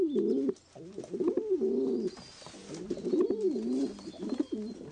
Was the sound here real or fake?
real